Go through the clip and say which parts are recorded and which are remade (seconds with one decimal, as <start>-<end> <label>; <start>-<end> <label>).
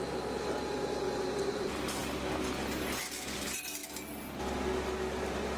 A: 0.0-5.6 recorded